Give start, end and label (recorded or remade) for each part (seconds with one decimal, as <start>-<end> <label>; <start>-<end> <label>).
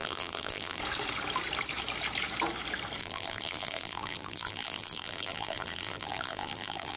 0.0-0.8 remade; 0.8-3.0 recorded; 3.0-7.0 remade